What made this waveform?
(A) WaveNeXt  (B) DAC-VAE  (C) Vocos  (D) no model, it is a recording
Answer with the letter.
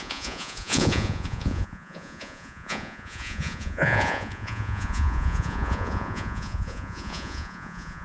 C